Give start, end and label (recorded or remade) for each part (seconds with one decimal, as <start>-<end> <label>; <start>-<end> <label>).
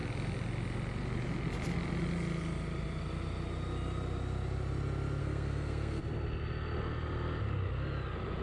0.0-5.2 recorded; 5.2-6.0 remade; 6.0-8.4 recorded